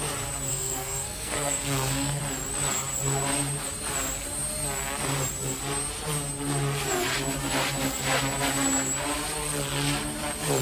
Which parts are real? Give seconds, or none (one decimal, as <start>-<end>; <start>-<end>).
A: 0.0-0.5; 2.2-10.6